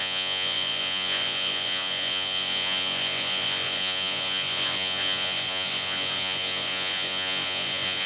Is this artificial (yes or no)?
yes